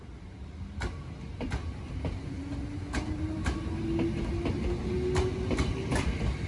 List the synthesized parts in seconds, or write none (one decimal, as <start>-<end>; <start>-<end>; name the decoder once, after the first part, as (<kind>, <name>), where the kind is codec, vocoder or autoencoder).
1.6-3.7 (vocoder, BigVGAN v2)